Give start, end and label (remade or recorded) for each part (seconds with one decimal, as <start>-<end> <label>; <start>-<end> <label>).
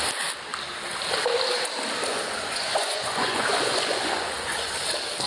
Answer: 0.0-2.1 recorded; 2.1-4.7 remade; 4.7-5.3 recorded